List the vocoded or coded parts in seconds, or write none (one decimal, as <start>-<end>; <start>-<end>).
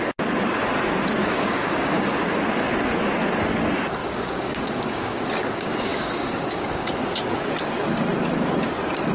1.2-2.1; 4.0-6.9